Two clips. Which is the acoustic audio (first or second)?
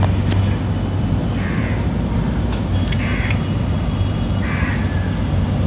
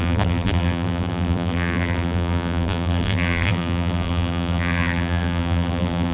first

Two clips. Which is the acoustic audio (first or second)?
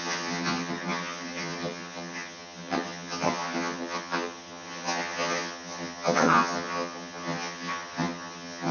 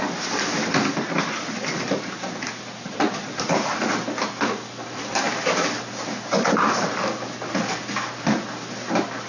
second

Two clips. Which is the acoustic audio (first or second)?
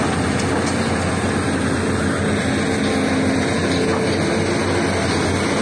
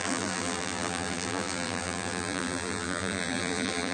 first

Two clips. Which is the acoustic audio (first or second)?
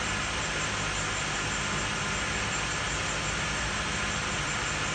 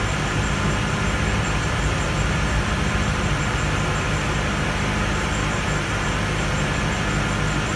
first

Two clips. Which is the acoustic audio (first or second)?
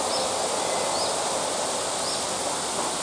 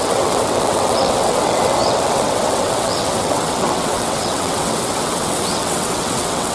first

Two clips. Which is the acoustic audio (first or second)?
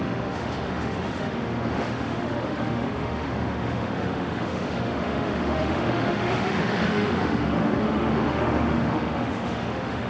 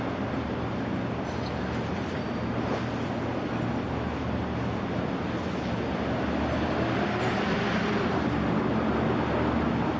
second